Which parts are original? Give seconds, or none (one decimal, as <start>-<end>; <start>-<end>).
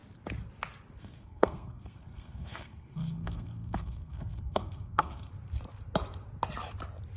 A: 0.0-1.0; 5.3-7.2